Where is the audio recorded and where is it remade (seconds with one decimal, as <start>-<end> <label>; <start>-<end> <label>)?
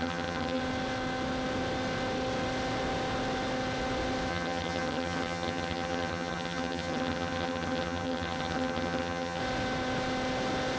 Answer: 0.0-0.6 remade; 0.6-4.3 recorded; 4.3-9.4 remade; 9.4-10.8 recorded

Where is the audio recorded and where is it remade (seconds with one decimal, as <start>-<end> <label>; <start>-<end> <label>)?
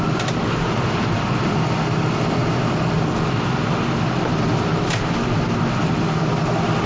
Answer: 0.0-6.9 recorded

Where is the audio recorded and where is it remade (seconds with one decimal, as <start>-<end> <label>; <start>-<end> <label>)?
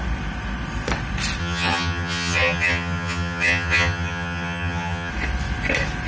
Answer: 0.0-1.4 recorded; 1.4-5.1 remade; 5.1-6.1 recorded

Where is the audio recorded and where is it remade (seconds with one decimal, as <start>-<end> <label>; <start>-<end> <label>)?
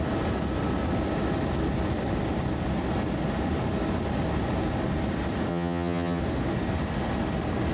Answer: 0.0-5.5 recorded; 5.5-6.2 remade; 6.2-7.7 recorded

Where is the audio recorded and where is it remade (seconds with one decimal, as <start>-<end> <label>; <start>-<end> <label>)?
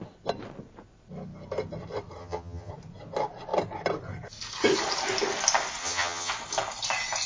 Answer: 0.0-2.2 recorded; 2.2-2.7 remade; 2.7-5.8 recorded; 5.8-6.3 remade; 6.3-7.3 recorded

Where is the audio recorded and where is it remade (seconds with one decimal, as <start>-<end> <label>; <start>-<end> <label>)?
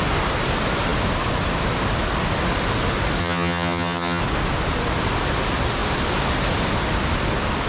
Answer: 0.0-3.2 recorded; 3.2-4.2 remade; 4.2-7.7 recorded